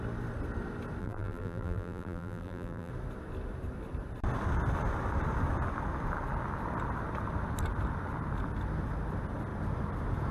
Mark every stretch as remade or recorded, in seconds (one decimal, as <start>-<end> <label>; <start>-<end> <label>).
0.0-1.0 recorded; 1.0-2.9 remade; 2.9-10.3 recorded